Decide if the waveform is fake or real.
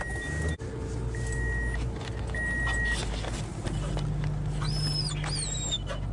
real